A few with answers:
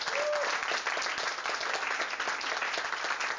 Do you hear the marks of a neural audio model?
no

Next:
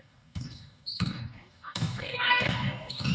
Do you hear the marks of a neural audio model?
yes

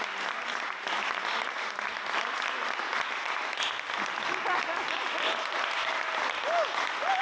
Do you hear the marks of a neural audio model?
no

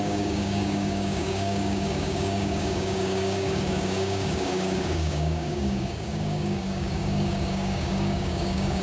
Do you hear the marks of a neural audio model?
yes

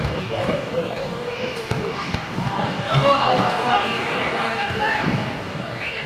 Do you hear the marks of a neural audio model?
yes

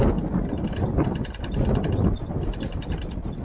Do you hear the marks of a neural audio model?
no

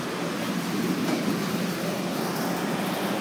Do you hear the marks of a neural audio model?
no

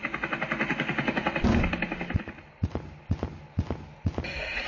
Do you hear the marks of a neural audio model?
no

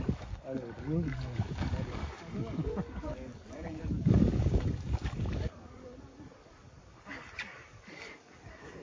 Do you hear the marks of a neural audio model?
yes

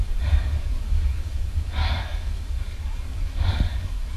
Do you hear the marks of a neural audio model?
yes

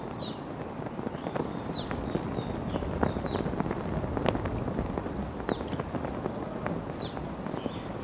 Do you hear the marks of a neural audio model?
no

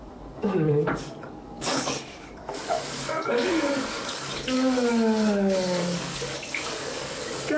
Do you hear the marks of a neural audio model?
yes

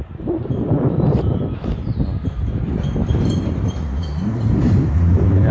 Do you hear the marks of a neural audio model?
no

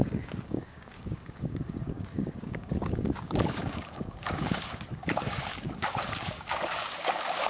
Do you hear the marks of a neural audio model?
yes